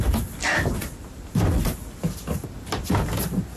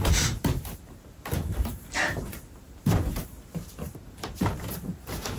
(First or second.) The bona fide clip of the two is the first